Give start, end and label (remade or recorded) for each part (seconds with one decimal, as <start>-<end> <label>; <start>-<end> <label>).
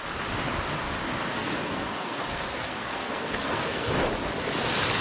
0.0-1.3 recorded; 1.3-3.9 remade; 3.9-5.0 recorded